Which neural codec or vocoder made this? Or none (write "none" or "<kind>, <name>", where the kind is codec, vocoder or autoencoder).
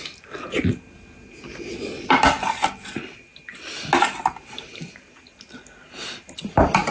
none